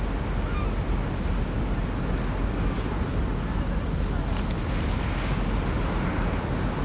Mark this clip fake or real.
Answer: real